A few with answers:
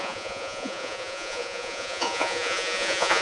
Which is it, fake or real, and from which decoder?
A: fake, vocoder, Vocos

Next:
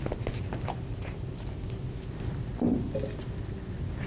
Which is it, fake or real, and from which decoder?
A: real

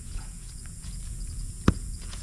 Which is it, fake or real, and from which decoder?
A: fake, vocoder, Vocos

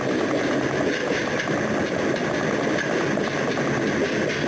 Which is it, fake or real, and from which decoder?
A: real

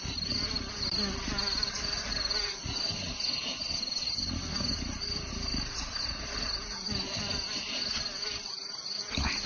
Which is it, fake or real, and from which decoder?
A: real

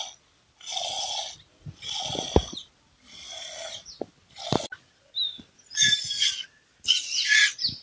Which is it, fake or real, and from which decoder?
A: real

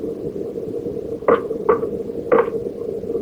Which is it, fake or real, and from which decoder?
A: real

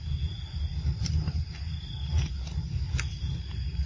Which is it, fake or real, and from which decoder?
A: real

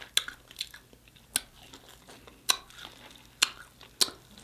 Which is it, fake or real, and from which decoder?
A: real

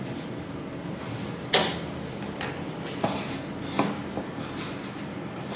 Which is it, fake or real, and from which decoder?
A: real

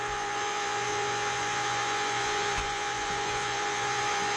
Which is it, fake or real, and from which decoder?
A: fake, vocoder, Vocos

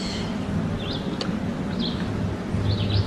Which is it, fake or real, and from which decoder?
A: real